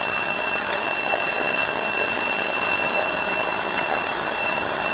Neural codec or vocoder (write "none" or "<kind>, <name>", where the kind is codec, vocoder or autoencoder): vocoder, HiFi-GAN